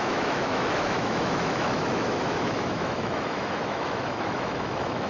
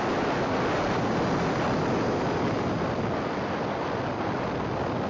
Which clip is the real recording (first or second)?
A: second